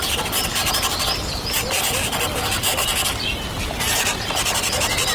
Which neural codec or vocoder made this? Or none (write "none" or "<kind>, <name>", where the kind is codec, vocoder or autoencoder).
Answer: none